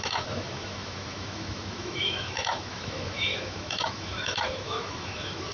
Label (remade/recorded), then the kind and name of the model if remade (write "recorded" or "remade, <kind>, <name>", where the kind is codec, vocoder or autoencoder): remade, autoencoder, DAC-VAE